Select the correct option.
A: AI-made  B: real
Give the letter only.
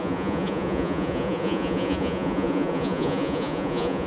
A